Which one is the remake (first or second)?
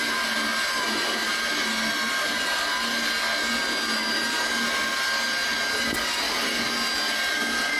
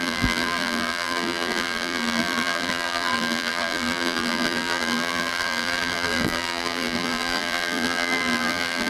second